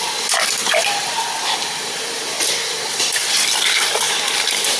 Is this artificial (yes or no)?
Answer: no